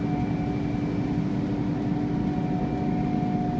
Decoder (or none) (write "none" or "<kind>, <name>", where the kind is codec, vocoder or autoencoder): none